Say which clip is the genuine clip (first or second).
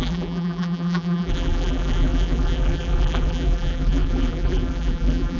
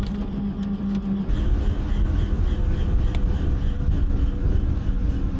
second